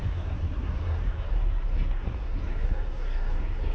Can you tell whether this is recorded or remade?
remade